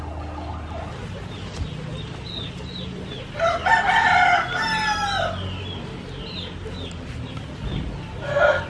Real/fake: real